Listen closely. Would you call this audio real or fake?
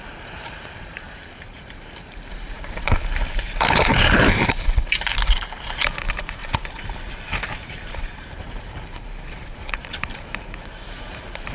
fake